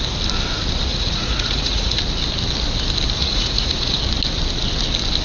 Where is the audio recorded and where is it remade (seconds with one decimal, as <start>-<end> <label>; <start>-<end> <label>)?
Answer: 0.0-0.9 recorded; 0.9-2.0 remade; 2.0-3.2 recorded; 3.2-4.0 remade; 4.0-5.2 recorded